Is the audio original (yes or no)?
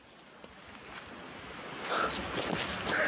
yes